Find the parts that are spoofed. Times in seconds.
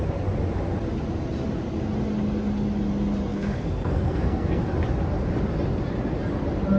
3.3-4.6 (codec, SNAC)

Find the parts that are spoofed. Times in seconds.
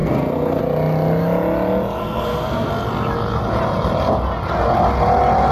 0.0-0.6 (codec, SNAC); 2.0-2.7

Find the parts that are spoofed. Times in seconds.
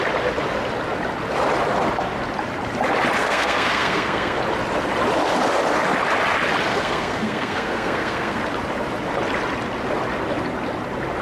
3.2-4.4 (codec, SNAC); 6.7-8.4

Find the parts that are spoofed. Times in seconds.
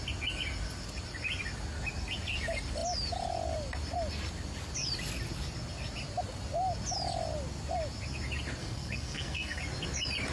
8.6-9.6 (codec, SNAC)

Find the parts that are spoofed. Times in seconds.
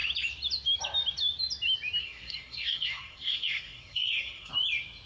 2.0-4.5 (codec, SNAC)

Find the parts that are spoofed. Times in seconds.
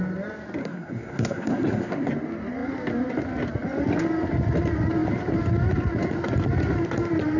0.6-2.1 (codec, SNAC)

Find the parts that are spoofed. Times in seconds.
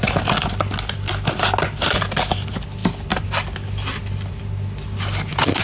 none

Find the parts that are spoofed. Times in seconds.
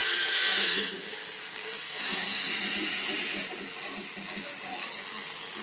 0.0-0.9 (codec, SNAC); 1.4-2.5